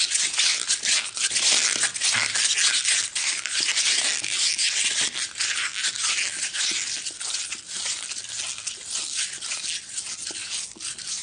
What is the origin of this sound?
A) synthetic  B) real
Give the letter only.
B